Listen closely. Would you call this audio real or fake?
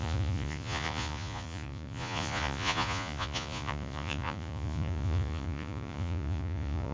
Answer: fake